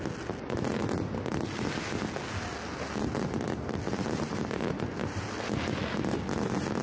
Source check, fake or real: real